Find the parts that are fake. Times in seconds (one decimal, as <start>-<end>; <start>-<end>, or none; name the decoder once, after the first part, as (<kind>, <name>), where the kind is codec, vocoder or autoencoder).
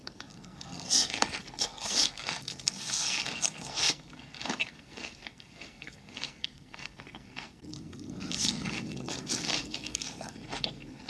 0.0-11.1 (codec, SNAC)